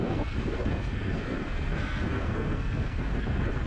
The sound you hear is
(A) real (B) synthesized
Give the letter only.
B